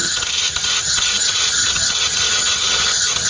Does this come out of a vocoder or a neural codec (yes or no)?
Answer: yes